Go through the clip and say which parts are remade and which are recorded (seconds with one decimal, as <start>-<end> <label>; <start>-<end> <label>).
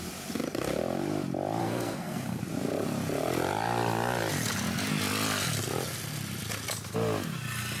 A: 0.0-1.6 recorded; 1.6-2.4 remade; 2.4-7.8 recorded